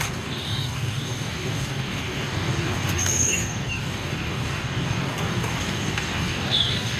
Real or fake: fake